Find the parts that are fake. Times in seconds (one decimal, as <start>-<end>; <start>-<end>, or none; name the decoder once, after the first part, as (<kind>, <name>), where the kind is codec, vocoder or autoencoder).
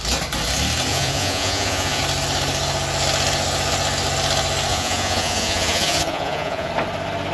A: 0.9-2.0 (vocoder, Vocos); 4.7-6.7